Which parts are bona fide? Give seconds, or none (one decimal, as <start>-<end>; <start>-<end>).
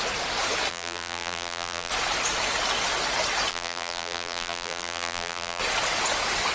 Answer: 0.0-0.7; 1.9-3.5; 5.6-6.5